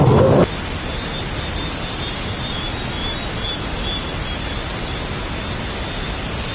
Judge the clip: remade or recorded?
recorded